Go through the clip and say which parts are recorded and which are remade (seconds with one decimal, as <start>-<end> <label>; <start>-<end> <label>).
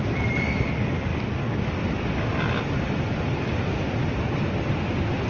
0.0-5.3 recorded